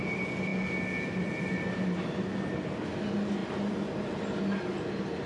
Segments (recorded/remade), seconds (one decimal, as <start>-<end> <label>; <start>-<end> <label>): 0.0-5.3 recorded